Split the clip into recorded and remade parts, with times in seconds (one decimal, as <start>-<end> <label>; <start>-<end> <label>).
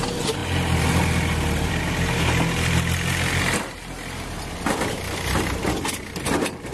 0.0-6.7 recorded